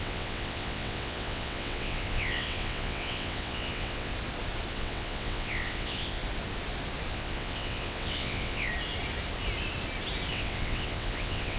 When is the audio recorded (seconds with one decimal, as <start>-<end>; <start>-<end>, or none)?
4.1-4.7; 6.2-7.1; 8.7-10.3